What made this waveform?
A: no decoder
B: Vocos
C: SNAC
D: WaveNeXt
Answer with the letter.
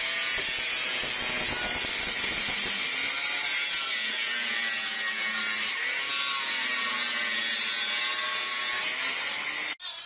A